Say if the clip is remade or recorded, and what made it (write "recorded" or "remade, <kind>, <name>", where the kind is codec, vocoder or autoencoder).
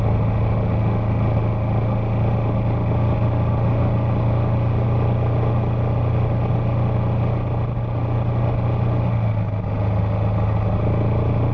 recorded